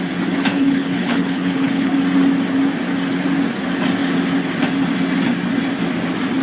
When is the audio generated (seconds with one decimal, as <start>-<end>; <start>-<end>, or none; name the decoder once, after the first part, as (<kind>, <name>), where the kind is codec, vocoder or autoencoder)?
0.5-1.9 (codec, HILCodec)